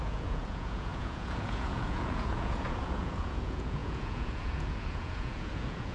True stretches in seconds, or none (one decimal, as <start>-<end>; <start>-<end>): none